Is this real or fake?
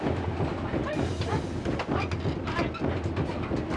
real